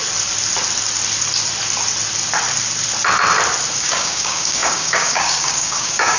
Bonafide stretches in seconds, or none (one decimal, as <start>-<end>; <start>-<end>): 0.0-3.7